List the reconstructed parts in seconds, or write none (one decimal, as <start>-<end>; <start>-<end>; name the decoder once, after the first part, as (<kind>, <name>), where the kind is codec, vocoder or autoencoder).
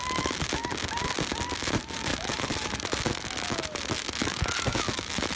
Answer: 0.0-0.6 (autoencoder, DAC-VAE); 1.6-5.4